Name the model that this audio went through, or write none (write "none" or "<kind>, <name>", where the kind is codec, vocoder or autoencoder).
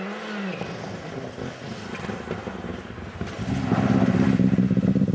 none